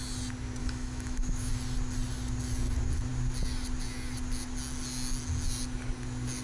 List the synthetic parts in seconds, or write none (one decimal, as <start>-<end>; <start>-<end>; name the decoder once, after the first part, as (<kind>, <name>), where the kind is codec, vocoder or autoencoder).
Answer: 0.6-1.5 (autoencoder, DAC-VAE)